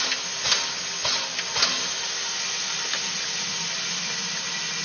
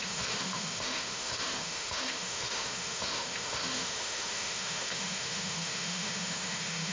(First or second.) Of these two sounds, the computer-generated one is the second